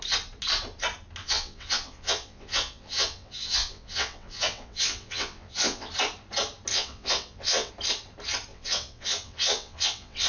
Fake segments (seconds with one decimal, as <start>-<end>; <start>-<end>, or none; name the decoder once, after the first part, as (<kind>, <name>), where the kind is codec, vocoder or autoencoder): 1.2-5.9 (vocoder, WaveNeXt); 6.7-7.7; 8.5-10.3